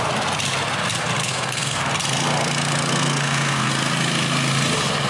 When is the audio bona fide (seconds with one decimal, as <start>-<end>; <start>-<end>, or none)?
0.0-1.2; 1.8-2.9; 3.7-5.1